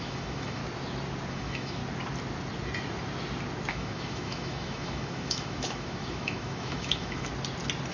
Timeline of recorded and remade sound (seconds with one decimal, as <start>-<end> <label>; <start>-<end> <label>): 0.0-0.6 remade; 0.6-1.3 recorded; 1.3-1.8 remade; 1.8-3.7 recorded; 3.7-7.3 remade; 7.3-7.9 recorded